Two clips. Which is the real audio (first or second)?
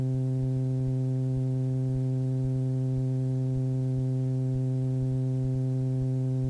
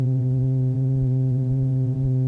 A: first